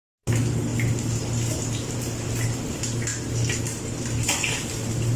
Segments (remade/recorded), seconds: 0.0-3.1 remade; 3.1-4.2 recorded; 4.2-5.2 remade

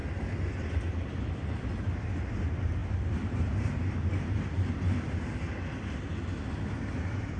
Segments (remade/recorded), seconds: 0.0-7.4 recorded

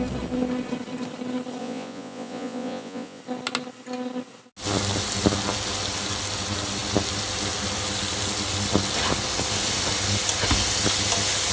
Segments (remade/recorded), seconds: 0.0-1.6 recorded; 1.6-3.2 remade; 3.2-11.5 recorded

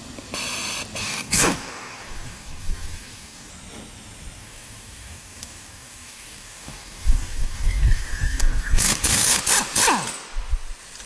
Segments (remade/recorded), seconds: 0.0-1.0 recorded; 1.0-3.5 remade; 3.5-4.4 recorded; 4.4-9.4 remade; 9.4-11.1 recorded

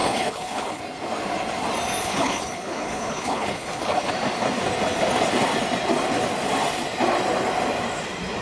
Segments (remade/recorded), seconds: 0.0-0.8 remade; 0.8-2.0 recorded; 2.0-4.1 remade; 4.1-8.4 recorded

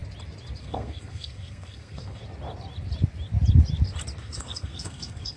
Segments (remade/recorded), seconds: 0.0-0.6 recorded; 0.6-2.2 remade; 2.2-4.2 recorded; 4.2-5.4 remade